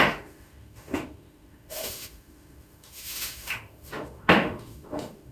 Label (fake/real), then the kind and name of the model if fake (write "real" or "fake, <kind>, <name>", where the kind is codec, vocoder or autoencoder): fake, autoencoder, DAC-VAE